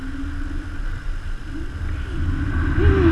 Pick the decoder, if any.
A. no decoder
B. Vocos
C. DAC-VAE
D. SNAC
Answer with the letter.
A